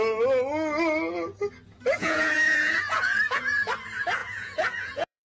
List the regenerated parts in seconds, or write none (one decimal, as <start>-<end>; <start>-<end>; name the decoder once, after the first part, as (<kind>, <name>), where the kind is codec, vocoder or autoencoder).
2.0-3.7 (vocoder, Vocos); 4.2-5.2